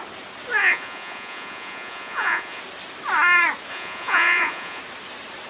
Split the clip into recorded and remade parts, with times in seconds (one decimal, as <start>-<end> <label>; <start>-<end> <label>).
0.0-0.6 recorded; 0.6-2.6 remade; 2.6-3.7 recorded; 3.7-4.8 remade; 4.8-5.5 recorded